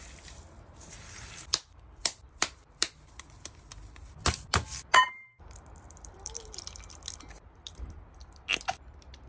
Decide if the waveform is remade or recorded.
remade